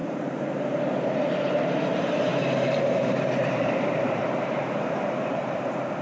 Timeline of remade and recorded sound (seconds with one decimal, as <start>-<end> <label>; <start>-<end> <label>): 0.0-6.0 remade